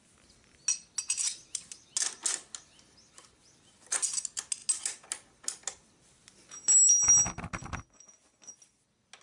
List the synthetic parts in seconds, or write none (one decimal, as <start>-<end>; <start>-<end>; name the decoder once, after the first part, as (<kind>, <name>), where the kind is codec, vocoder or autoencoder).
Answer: none